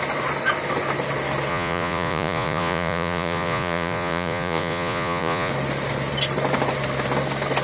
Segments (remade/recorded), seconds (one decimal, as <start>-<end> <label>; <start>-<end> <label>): 0.0-1.5 recorded; 1.5-5.5 remade; 5.5-7.6 recorded